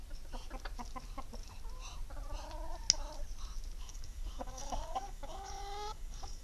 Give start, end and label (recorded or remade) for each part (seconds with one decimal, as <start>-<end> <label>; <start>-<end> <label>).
0.0-3.8 recorded; 3.8-6.4 remade